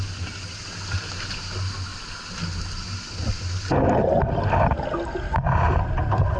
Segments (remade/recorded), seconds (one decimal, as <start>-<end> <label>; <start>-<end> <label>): 0.0-6.4 recorded